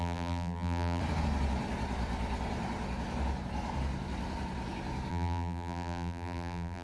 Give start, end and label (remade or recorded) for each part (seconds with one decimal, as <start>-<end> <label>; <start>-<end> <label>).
0.0-1.0 remade; 1.0-5.1 recorded; 5.1-6.8 remade